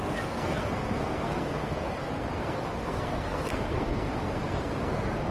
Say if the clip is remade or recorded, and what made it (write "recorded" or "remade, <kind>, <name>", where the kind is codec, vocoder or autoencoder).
remade, codec, SNAC